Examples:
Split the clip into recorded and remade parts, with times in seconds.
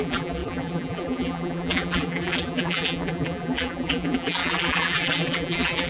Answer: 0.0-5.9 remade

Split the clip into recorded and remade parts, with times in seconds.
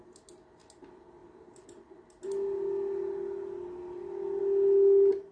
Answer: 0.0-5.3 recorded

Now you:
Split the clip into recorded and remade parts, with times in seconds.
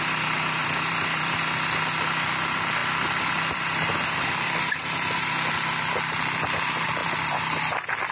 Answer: 0.0-0.6 recorded; 0.6-1.4 remade; 1.4-7.0 recorded; 7.0-7.6 remade; 7.6-8.1 recorded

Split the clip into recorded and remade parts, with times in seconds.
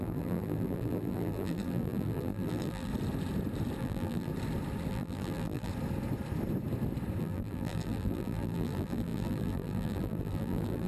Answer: 0.0-2.9 remade; 2.9-3.8 recorded; 3.8-4.3 remade; 4.3-4.9 recorded; 4.9-5.7 remade; 5.7-7.2 recorded; 7.2-10.9 remade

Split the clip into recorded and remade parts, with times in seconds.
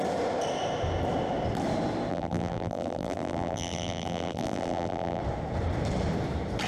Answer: 0.0-2.1 recorded; 2.1-5.2 remade; 5.2-6.7 recorded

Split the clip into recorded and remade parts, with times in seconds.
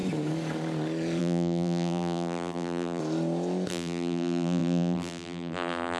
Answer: 0.0-1.2 recorded; 1.2-3.0 remade; 3.0-3.7 recorded; 3.7-6.0 remade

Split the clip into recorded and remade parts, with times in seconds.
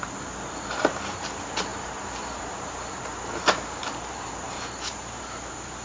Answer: 0.0-1.7 recorded; 1.7-5.2 remade; 5.2-5.8 recorded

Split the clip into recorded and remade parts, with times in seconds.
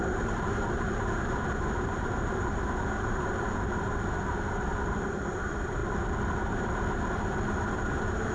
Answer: 0.0-5.8 remade; 5.8-7.5 recorded; 7.5-8.3 remade